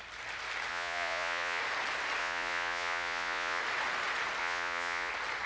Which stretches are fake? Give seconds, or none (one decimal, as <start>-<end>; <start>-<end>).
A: 0.7-1.6; 2.2-3.6; 4.4-5.1

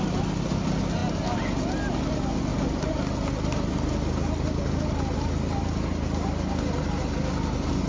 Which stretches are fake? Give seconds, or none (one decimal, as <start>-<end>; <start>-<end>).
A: none

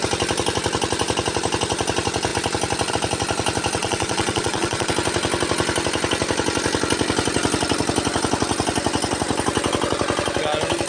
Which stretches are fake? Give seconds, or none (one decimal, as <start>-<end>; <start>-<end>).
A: 3.8-4.9

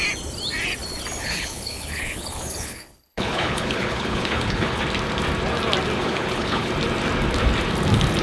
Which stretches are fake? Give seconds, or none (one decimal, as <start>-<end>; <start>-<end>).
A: 1.2-4.8; 6.0-6.7

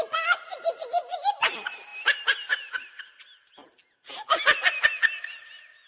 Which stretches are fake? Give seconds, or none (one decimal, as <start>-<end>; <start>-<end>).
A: none

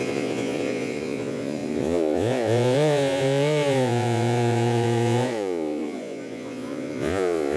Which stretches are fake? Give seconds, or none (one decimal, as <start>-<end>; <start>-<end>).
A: 0.0-7.6

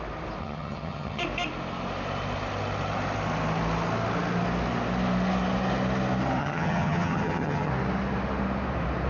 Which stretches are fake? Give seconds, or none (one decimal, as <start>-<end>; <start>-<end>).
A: 0.4-1.2; 6.4-7.7

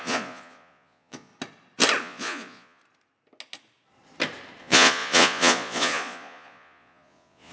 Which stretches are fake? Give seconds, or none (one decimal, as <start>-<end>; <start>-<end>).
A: 0.0-1.3; 2.0-2.8; 4.6-7.5